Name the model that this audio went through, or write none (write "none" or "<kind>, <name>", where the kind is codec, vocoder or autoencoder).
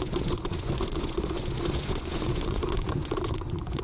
vocoder, Vocos